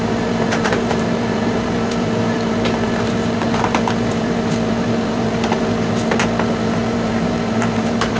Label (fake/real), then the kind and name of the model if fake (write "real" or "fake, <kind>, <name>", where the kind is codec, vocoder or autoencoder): fake, vocoder, BigVGAN v2